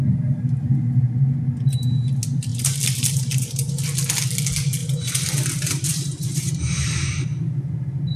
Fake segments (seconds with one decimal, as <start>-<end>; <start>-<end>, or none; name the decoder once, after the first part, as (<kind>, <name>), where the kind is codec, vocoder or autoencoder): 2.5-3.7 (vocoder, BigVGAN v2); 4.8-7.4